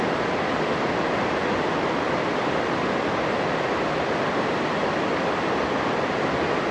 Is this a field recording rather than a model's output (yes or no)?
yes